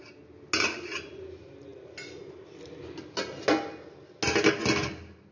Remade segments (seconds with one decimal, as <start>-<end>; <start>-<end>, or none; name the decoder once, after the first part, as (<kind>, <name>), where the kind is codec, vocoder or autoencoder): none